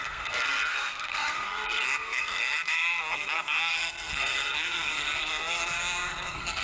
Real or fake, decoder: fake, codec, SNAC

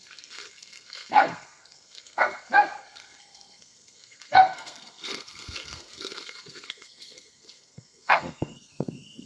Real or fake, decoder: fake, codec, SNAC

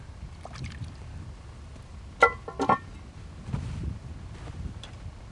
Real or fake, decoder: real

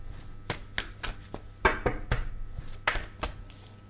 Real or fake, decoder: real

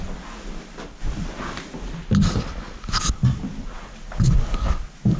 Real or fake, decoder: real